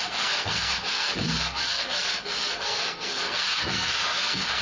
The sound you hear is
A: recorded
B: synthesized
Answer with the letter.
B